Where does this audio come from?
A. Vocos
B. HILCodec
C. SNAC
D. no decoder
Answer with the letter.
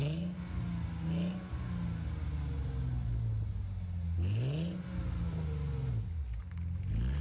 D